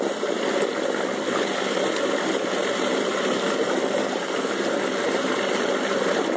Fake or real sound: real